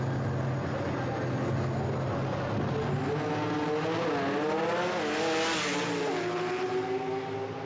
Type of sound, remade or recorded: recorded